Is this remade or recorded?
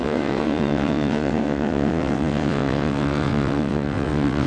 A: remade